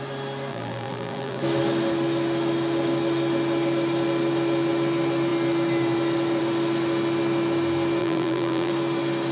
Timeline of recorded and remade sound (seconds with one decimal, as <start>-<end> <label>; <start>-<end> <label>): 0.0-0.5 recorded; 0.5-1.4 remade; 1.4-8.0 recorded; 8.0-8.7 remade; 8.7-9.3 recorded